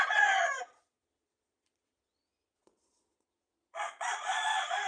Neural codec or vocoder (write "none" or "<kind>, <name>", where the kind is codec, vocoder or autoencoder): vocoder, Vocos